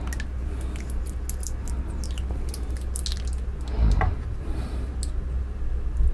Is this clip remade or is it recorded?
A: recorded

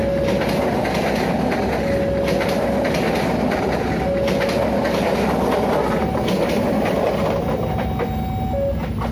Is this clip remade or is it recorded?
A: recorded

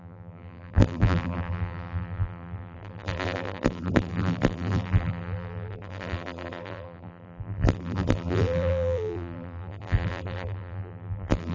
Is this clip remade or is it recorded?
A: remade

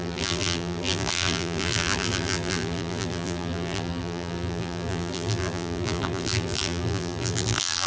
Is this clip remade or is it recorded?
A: remade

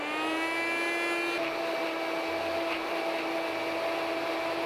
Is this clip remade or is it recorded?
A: recorded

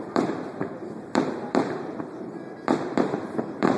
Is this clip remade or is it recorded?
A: remade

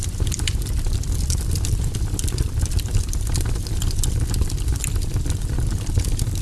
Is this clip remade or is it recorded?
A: remade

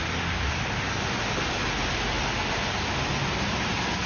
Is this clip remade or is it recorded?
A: recorded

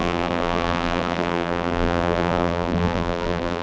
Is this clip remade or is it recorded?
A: remade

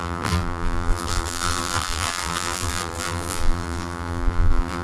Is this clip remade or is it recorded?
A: remade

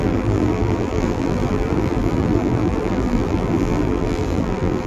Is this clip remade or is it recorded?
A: remade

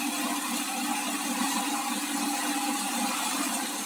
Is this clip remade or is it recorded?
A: remade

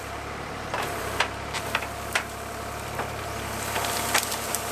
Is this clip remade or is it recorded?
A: remade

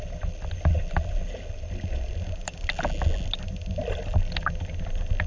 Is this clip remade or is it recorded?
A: recorded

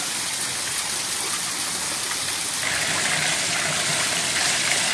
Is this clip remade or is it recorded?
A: recorded